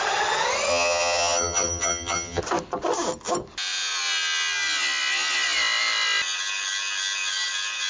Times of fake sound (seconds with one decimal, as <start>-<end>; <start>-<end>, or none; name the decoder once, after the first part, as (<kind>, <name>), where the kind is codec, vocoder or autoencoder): 0.7-2.4 (vocoder, HiFi-GAN)